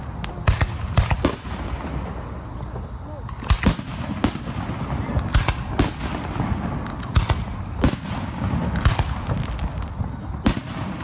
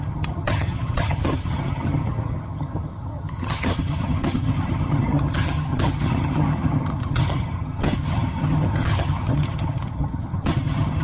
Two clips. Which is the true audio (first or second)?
first